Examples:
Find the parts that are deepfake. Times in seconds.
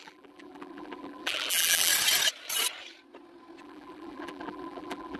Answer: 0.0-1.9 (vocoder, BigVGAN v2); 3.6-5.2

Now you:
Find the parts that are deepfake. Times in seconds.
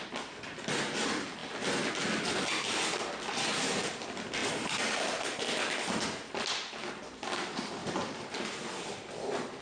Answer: 4.4-5.4 (vocoder, BigVGAN v2); 7.8-8.7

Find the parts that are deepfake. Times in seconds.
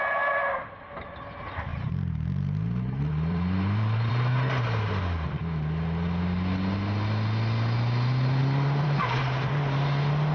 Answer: 1.7-4.1 (vocoder, BigVGAN v2); 8.4-9.2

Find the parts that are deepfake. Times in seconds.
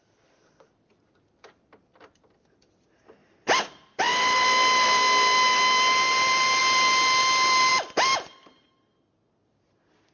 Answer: 3.2-4.0 (vocoder, BigVGAN v2)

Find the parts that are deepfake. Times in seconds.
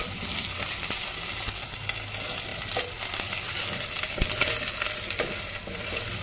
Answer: 2.5-5.2 (vocoder, BigVGAN v2)